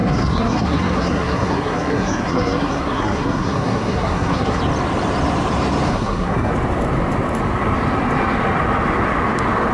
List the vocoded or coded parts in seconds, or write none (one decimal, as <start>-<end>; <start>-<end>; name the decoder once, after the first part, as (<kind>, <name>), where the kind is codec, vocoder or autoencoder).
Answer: 0.0-4.6 (codec, SNAC); 5.9-6.5